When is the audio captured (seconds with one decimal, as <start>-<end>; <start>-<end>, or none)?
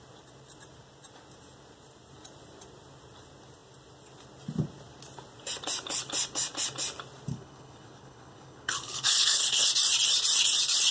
0.0-7.3; 9.7-10.9